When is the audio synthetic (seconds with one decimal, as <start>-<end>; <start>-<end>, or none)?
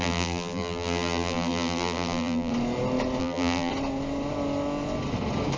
0.0-2.5; 3.2-3.7